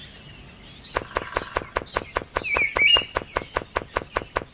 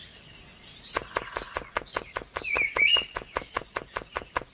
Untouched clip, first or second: first